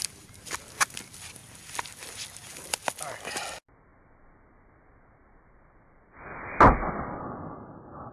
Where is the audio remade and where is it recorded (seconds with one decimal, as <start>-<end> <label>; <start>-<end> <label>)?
0.0-8.1 recorded